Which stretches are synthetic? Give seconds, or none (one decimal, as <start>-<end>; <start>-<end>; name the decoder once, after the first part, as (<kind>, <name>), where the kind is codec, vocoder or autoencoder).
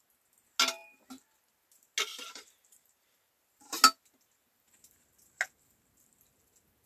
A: 2.1-3.3 (vocoder, BigVGAN v2)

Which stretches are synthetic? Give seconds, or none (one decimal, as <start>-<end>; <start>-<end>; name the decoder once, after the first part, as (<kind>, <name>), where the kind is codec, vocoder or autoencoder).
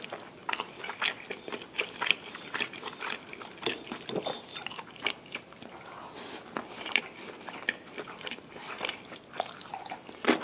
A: none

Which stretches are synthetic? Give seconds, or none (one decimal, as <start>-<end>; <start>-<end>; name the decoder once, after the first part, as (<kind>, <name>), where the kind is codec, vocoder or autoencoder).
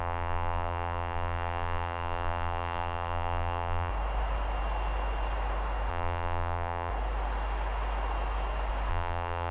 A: 0.0-3.9 (vocoder, BigVGAN v2); 5.9-6.9; 8.9-9.5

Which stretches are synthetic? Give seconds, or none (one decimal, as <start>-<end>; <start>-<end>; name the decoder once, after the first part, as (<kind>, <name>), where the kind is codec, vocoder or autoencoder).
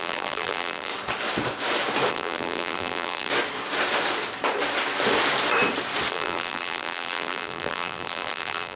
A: 0.0-0.9 (vocoder, BigVGAN v2); 2.1-3.3; 6.1-8.8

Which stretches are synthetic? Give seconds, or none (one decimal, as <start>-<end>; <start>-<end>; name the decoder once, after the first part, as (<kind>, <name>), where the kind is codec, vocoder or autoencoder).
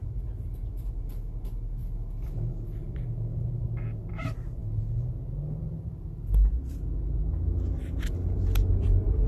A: none